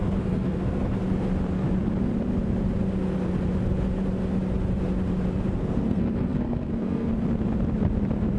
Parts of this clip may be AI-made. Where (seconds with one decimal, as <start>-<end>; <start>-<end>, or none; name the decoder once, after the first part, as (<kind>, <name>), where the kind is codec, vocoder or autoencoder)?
0.0-1.0 (codec, SNAC); 5.6-7.1